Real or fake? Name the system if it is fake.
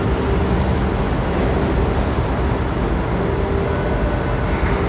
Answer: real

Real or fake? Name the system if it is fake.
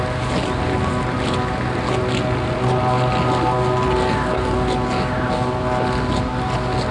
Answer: real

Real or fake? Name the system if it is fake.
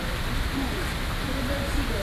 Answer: real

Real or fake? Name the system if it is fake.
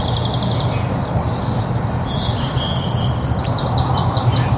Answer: real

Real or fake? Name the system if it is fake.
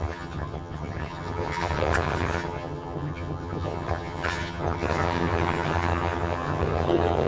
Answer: fake, vocoder, HiFi-GAN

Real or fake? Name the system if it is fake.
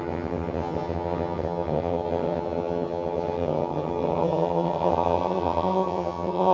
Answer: fake, vocoder, HiFi-GAN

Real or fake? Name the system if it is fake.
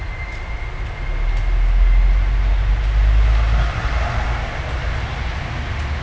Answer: real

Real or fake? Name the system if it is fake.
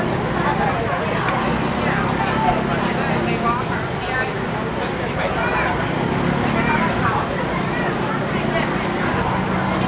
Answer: real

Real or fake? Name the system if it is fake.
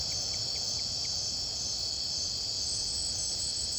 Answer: real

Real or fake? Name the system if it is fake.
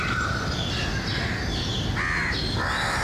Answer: real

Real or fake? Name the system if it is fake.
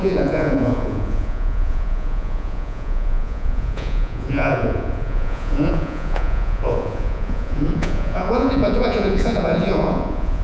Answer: fake, vocoder, Vocos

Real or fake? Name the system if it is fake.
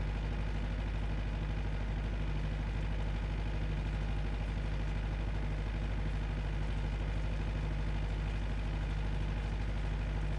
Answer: real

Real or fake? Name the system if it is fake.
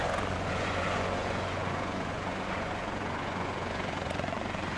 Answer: fake, vocoder, Vocos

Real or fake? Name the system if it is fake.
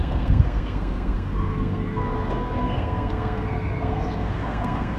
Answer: fake, codec, SNAC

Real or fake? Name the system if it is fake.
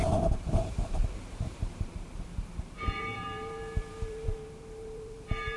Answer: fake, vocoder, BigVGAN v2